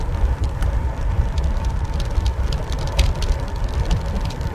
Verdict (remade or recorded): remade